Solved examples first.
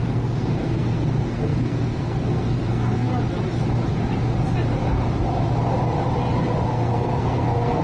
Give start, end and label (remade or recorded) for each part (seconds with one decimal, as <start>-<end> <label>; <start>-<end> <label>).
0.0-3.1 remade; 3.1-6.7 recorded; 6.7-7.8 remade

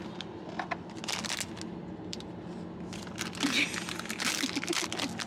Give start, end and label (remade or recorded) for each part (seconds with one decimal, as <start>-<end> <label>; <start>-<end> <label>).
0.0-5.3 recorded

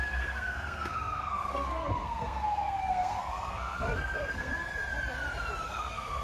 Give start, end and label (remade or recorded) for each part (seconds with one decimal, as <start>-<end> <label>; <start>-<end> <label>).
0.0-4.5 remade; 4.5-5.6 recorded; 5.6-6.2 remade

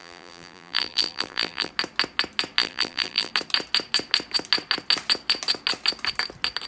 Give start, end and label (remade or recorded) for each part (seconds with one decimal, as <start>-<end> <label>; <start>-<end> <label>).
0.0-1.7 remade; 1.7-2.6 recorded; 2.6-3.3 remade; 3.3-6.7 recorded

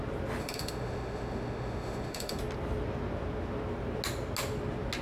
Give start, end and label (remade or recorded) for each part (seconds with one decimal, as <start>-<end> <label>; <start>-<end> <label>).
0.0-0.4 recorded; 0.4-2.4 remade; 2.4-5.0 recorded

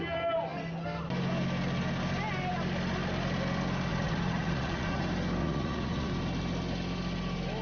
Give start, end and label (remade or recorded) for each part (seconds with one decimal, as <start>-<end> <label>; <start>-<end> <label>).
0.0-3.9 recorded; 3.9-5.0 remade; 5.0-5.4 recorded; 5.4-6.1 remade; 6.1-7.6 recorded

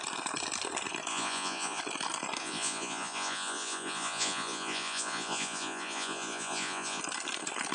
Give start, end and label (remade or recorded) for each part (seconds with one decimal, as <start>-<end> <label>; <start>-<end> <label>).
0.0-1.1 recorded; 1.1-1.8 remade; 1.8-2.4 recorded; 2.4-7.0 remade; 7.0-7.7 recorded

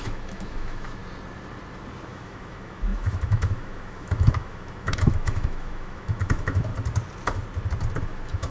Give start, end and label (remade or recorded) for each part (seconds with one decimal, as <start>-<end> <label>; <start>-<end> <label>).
0.0-1.0 remade; 1.0-2.1 recorded; 2.1-6.7 remade; 6.7-8.0 recorded; 8.0-8.5 remade